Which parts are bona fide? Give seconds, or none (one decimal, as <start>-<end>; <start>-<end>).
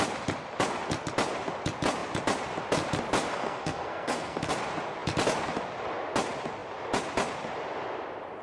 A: 0.0-3.3; 4.5-8.4